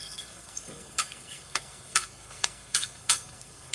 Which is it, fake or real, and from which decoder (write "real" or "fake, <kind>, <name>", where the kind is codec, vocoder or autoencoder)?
fake, codec, SNAC